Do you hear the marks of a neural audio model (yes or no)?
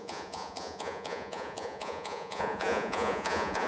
yes